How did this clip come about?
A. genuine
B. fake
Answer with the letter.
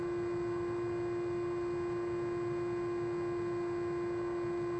A